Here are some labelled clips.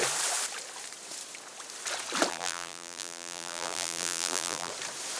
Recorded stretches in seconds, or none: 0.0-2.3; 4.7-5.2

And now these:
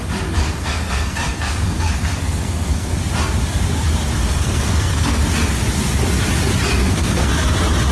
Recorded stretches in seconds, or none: 0.0-0.4; 3.0-4.2; 5.2-6.8; 7.3-7.9

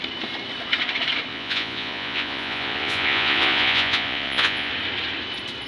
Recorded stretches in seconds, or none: 0.0-1.3; 4.7-5.7

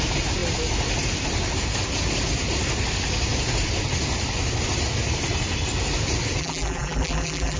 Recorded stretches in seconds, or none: 0.0-6.4

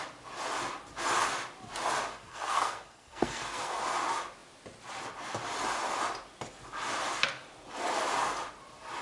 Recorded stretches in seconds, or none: 0.0-2.1; 3.8-9.0

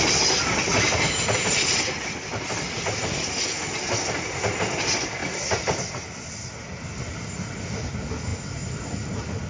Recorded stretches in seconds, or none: 0.0-9.5

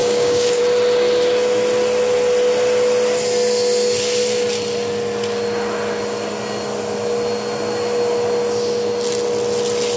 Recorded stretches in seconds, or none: 0.6-10.0

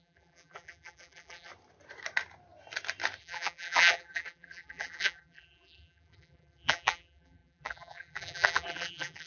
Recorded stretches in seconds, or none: 1.5-3.2